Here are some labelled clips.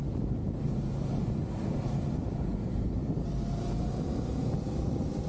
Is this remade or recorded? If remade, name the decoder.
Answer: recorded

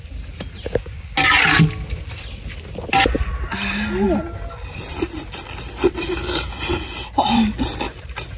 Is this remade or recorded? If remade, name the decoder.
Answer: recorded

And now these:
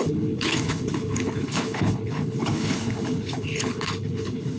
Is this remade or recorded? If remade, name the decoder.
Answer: remade, codec, HILCodec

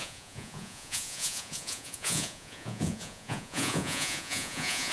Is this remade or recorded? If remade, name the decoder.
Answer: remade, vocoder, Vocos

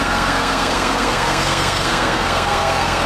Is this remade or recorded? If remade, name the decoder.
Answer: remade, codec, SNAC